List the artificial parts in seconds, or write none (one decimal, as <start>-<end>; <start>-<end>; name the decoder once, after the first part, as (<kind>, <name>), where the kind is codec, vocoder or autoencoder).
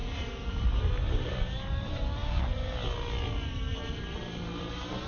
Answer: 0.0-2.2 (vocoder, BigVGAN v2); 3.7-5.1